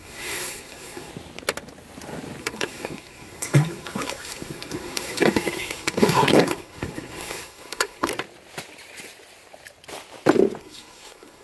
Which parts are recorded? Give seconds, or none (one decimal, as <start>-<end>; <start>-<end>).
1.1-2.4; 8.1-10.6